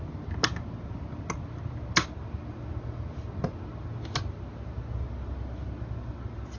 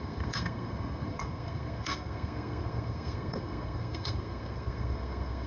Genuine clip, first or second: first